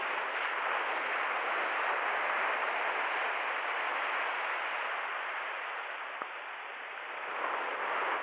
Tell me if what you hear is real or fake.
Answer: real